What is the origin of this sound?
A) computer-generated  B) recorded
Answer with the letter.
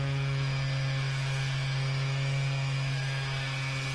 B